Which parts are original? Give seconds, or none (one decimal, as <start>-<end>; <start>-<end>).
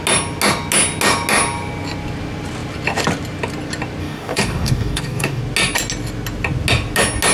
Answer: 0.0-4.0; 5.4-7.3